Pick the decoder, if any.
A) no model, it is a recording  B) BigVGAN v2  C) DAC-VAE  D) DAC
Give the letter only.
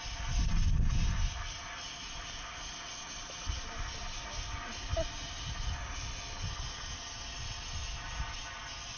A